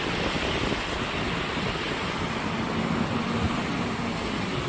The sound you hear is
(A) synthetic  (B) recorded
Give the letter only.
B